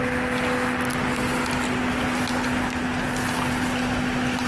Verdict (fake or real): real